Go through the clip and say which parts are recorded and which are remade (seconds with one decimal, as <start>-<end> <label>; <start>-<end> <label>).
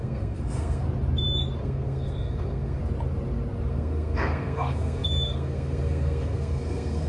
0.0-0.8 remade; 0.8-1.6 recorded; 1.6-2.8 remade; 2.8-3.7 recorded; 3.7-7.1 remade